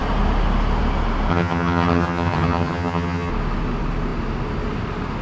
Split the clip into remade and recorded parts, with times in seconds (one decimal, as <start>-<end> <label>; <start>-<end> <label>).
0.0-1.3 recorded; 1.3-3.3 remade; 3.3-5.2 recorded